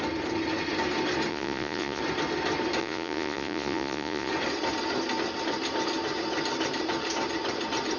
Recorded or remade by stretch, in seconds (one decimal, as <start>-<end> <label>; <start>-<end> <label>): 0.0-1.3 recorded; 1.3-2.0 remade; 2.0-2.8 recorded; 2.8-4.3 remade; 4.3-8.0 recorded